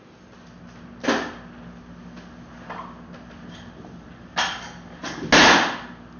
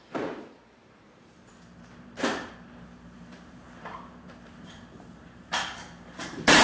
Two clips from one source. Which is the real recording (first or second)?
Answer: first